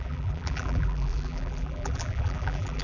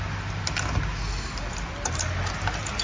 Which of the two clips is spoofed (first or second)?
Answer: first